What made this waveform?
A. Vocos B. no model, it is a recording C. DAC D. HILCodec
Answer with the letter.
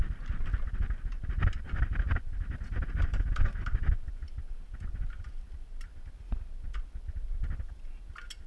B